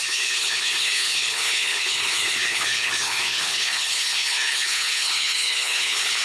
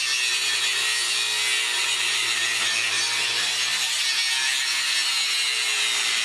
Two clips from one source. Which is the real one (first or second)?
second